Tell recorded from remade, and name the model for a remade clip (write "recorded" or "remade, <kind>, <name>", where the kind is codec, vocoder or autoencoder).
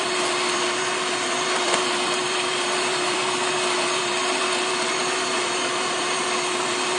remade, vocoder, BigVGAN v2